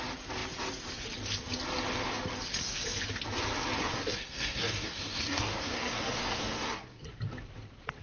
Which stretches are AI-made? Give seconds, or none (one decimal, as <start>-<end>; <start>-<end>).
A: 3.8-7.0